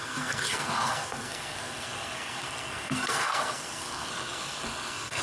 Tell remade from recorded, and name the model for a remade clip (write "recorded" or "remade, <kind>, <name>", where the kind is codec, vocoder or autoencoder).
remade, codec, SNAC